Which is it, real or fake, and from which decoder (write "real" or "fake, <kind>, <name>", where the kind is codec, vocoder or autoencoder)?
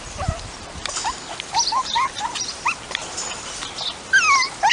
real